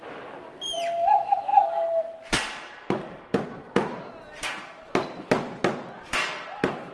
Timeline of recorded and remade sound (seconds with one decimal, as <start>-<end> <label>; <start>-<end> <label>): 0.0-6.9 recorded